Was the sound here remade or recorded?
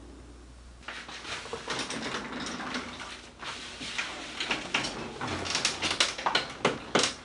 recorded